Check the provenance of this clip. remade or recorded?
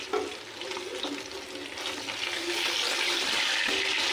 recorded